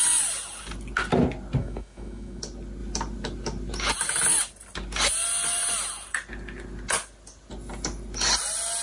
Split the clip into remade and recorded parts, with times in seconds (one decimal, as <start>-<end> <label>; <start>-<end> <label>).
0.0-1.6 recorded; 1.6-2.4 remade; 2.4-8.8 recorded